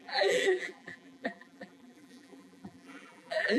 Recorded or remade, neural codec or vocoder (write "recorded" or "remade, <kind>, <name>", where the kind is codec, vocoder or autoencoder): remade, vocoder, BigVGAN v2